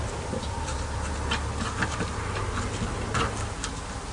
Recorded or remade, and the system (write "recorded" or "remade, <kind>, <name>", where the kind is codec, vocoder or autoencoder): recorded